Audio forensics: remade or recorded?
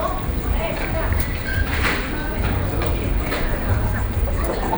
remade